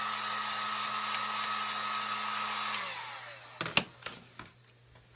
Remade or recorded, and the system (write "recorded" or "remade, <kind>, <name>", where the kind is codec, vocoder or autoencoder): recorded